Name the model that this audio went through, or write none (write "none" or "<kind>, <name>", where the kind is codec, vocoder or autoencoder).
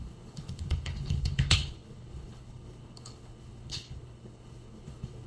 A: codec, HILCodec